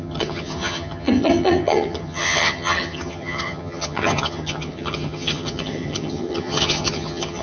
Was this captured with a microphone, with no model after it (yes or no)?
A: no